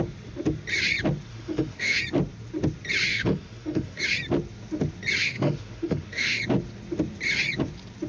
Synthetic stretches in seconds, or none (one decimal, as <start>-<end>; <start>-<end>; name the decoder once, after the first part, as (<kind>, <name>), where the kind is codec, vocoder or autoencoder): 1.3-2.0 (autoencoder, DAC-VAE); 3.1-4.0; 5.2-6.4